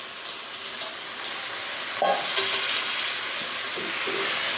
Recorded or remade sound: recorded